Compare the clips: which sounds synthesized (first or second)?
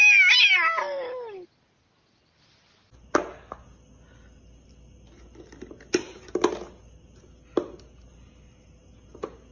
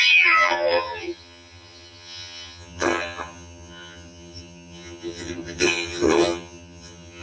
second